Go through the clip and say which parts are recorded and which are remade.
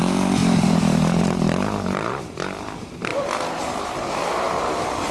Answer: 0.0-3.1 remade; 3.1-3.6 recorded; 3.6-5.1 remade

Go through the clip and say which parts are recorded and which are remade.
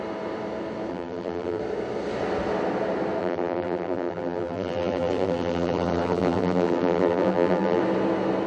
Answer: 0.0-0.9 recorded; 0.9-1.6 remade; 1.6-3.2 recorded; 3.2-7.8 remade; 7.8-8.5 recorded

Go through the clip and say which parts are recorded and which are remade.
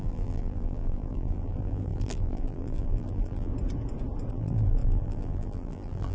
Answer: 0.0-3.5 remade; 3.5-4.3 recorded; 4.3-6.1 remade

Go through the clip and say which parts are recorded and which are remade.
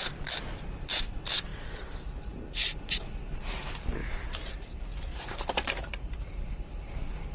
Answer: 0.0-1.5 recorded; 1.5-3.0 remade; 3.0-4.0 recorded; 4.0-7.3 remade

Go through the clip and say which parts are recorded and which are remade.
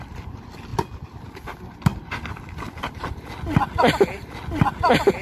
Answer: 0.0-5.2 recorded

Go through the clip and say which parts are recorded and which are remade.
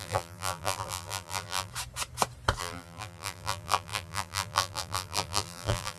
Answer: 0.0-1.7 remade; 1.7-2.6 recorded; 2.6-6.0 remade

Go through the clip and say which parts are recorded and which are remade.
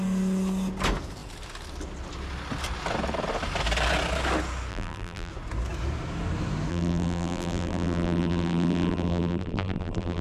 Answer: 0.0-4.7 recorded; 4.7-5.3 remade; 5.3-6.7 recorded; 6.7-10.2 remade